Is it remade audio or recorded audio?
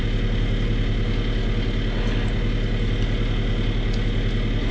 recorded